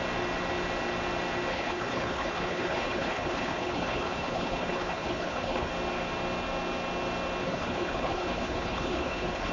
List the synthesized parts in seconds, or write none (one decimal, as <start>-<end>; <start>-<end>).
1.5-5.7; 7.4-9.5